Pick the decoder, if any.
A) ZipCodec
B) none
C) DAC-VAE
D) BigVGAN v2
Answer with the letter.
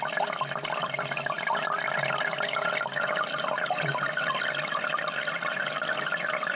B